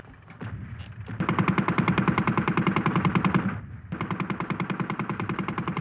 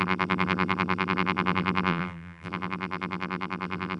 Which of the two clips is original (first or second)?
first